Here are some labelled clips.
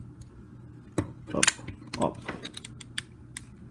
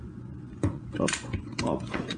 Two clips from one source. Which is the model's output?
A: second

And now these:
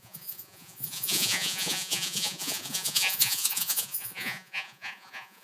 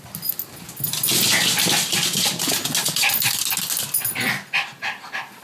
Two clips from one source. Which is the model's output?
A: first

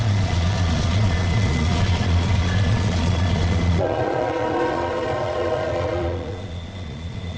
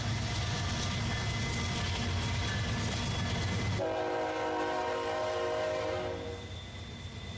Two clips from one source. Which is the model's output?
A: first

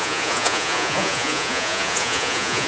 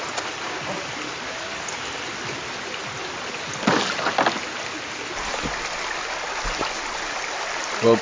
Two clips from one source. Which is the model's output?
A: first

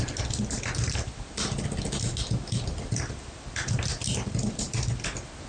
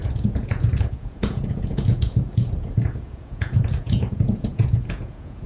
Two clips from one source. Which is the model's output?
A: second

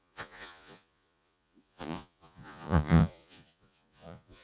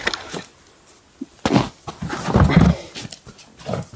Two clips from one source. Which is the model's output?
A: first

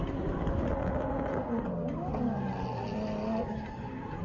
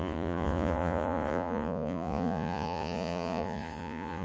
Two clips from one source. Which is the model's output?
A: second